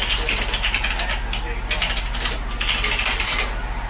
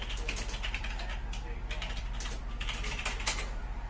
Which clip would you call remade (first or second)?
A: second